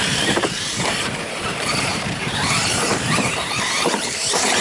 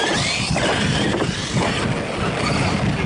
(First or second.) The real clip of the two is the second